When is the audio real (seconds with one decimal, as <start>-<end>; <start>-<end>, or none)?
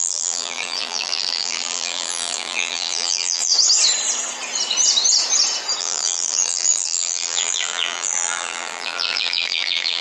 3.5-5.8